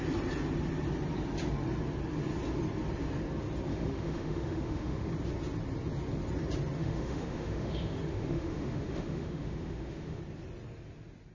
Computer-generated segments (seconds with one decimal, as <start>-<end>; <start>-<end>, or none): 3.7-5.1; 6.8-10.2